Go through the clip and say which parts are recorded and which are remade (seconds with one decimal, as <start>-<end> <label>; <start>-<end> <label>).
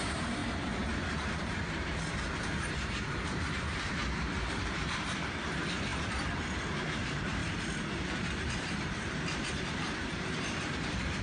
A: 0.0-4.0 remade; 4.0-4.5 recorded; 4.5-11.2 remade